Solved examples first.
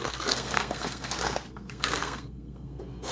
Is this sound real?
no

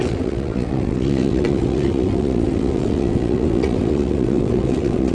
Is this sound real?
no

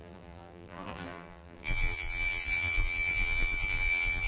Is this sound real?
no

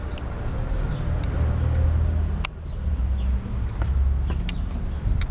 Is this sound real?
yes